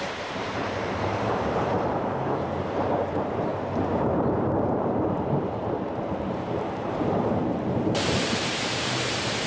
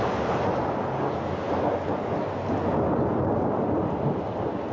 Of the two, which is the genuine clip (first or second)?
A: second